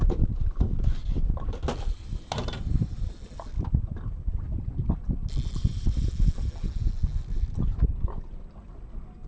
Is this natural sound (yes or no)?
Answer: yes